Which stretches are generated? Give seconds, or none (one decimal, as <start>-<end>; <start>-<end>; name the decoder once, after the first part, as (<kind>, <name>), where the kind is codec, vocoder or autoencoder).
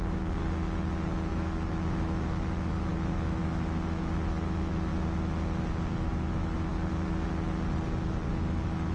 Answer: 0.0-0.4 (autoencoder, DAC-VAE); 1.3-4.9; 6.1-6.7; 8.3-8.9